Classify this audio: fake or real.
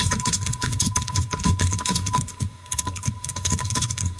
fake